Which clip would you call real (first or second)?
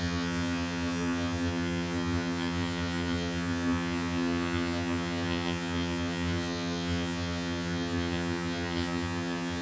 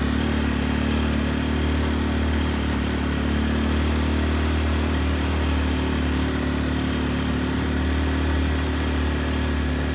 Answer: second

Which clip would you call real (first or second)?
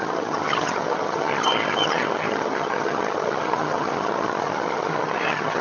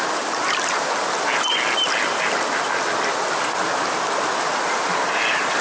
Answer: second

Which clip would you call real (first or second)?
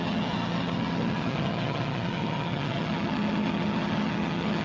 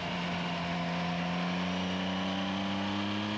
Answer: second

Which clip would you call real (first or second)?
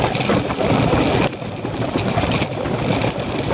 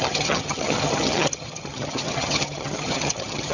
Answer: first